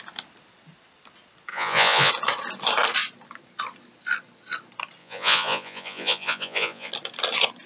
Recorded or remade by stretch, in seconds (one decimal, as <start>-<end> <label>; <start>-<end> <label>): 0.0-1.5 recorded; 1.5-2.1 remade; 2.1-5.0 recorded; 5.0-6.9 remade; 6.9-7.7 recorded